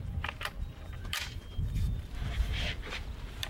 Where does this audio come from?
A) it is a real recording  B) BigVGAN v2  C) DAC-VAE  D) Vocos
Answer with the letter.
B